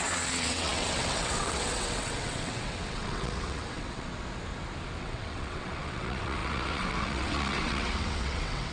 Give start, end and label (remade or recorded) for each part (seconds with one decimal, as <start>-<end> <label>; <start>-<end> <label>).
0.0-4.1 remade; 4.1-5.0 recorded; 5.0-8.7 remade